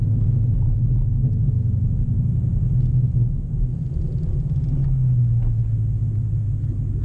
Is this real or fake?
real